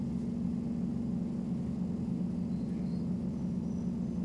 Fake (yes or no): no